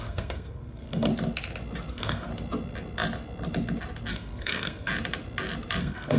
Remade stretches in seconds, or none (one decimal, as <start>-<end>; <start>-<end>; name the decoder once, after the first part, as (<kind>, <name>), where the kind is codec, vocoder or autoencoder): 0.0-1.1 (codec, SNAC); 1.9-2.3; 4.1-4.9; 5.8-6.2